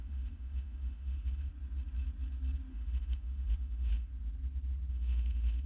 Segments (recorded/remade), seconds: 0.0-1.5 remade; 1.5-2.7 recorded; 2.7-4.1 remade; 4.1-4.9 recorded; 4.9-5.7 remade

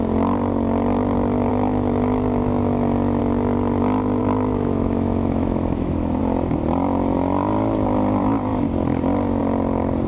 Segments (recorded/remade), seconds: 0.0-1.5 recorded; 1.5-3.2 remade; 3.2-4.2 recorded; 4.2-6.2 remade; 6.2-10.1 recorded